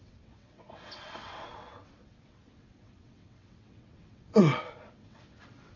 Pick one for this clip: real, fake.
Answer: fake